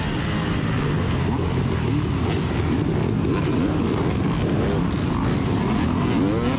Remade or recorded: recorded